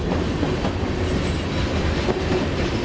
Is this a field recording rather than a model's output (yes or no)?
yes